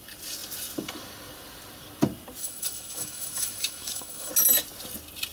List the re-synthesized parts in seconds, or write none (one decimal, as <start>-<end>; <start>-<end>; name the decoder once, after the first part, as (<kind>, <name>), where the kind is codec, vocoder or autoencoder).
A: 2.4-4.3 (autoencoder, DAC-VAE)